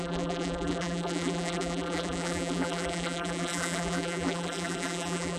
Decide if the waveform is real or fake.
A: fake